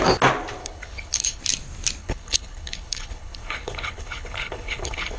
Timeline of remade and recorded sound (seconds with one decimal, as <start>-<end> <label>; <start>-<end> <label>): 0.0-0.6 recorded; 0.6-1.4 remade; 1.4-2.0 recorded; 2.0-5.2 remade